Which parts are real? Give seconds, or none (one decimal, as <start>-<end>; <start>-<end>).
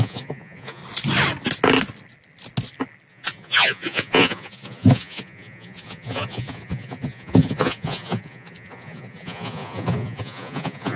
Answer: 0.8-3.1